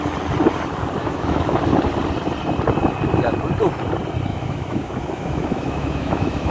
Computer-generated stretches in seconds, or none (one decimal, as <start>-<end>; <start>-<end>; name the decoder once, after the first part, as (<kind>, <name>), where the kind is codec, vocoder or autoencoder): 1.0-1.6 (autoencoder, DAC-VAE); 4.3-6.5